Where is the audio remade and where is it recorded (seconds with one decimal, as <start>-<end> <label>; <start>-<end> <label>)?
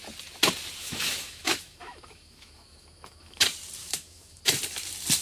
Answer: 0.0-0.8 recorded; 0.8-3.4 remade; 3.4-3.8 recorded; 3.8-4.4 remade; 4.4-5.2 recorded